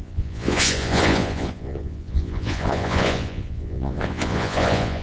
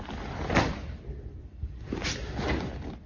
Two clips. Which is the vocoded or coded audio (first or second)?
first